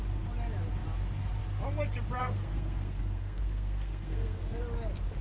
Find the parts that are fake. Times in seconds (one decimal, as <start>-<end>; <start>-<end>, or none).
2.2-4.6